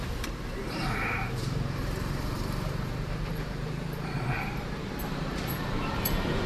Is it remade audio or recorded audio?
remade